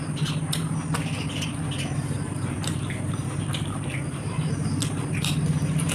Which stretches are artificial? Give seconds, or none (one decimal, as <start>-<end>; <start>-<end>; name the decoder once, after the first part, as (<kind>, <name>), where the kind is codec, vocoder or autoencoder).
2.3-5.9 (vocoder, BigVGAN v2)